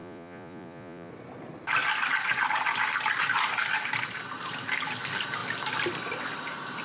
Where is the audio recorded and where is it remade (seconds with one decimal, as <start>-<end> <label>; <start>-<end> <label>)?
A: 0.0-1.1 remade; 1.1-6.8 recorded